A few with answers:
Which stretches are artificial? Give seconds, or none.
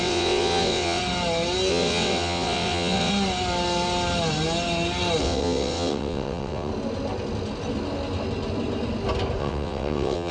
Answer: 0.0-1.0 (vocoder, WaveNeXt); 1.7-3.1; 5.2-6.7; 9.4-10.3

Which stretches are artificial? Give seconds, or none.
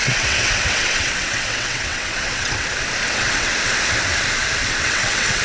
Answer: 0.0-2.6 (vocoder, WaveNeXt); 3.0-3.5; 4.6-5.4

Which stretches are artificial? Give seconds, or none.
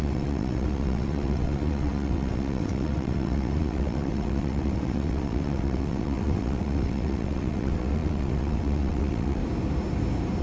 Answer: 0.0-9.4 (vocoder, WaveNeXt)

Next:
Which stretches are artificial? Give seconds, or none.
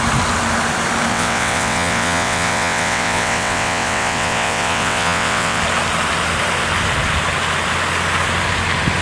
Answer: 1.1-5.6 (vocoder, WaveNeXt)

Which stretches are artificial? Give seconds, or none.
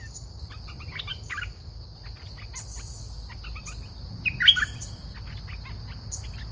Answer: none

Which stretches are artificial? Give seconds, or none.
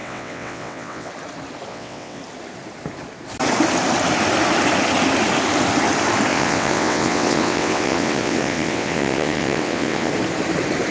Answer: 0.0-1.1 (vocoder, WaveNeXt); 1.7-2.2; 6.3-10.1